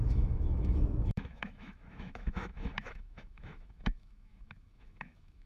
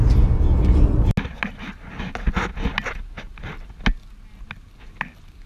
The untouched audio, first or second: second